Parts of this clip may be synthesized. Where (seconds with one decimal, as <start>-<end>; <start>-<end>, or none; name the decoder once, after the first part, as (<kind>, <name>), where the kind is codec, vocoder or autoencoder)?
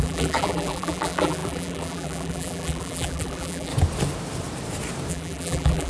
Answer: 0.0-3.7 (vocoder, BigVGAN v2); 5.1-5.9